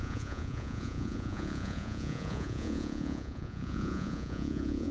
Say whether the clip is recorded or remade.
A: remade